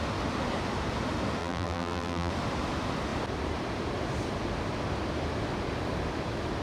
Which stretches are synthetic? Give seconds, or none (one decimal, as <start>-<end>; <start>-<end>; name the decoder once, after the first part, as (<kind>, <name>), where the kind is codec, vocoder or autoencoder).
1.4-2.3 (vocoder, BigVGAN v2)